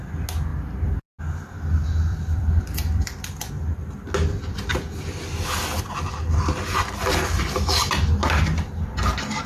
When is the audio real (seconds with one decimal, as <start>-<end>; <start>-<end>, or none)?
0.0-0.5; 1.2-2.1; 3.5-9.5